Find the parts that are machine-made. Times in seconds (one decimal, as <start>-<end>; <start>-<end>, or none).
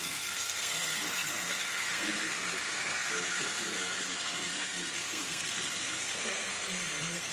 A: 0.0-7.3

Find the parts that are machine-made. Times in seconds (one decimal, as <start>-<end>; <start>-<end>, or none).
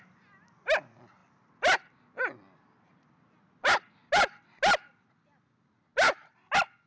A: none